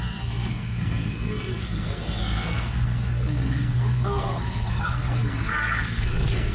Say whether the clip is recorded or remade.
remade